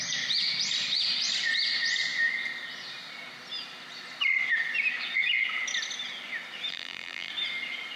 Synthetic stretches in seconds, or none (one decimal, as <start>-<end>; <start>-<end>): 6.7-7.3